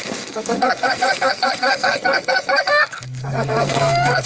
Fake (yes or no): yes